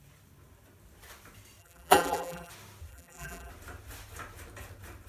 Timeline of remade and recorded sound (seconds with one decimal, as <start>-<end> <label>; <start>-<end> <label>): 0.0-1.6 recorded; 1.6-2.5 remade; 2.5-2.9 recorded; 2.9-3.5 remade; 3.5-5.1 recorded